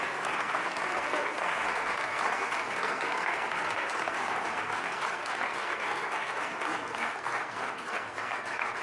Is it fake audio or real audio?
fake